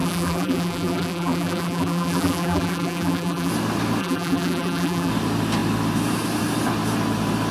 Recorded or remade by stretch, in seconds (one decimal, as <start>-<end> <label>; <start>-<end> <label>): 0.0-3.5 remade; 3.5-4.0 recorded; 4.0-5.1 remade; 5.1-7.5 recorded